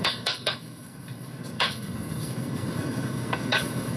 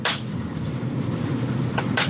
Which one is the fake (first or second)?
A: first